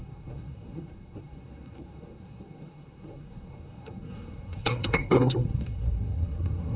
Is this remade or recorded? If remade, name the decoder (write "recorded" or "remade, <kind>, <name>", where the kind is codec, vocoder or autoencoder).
remade, codec, SNAC